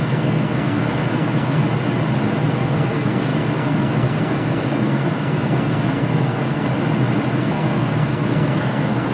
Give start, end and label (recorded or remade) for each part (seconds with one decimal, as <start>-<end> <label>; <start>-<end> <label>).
0.0-1.6 remade; 1.6-2.5 recorded; 2.5-6.7 remade; 6.7-7.4 recorded; 7.4-9.1 remade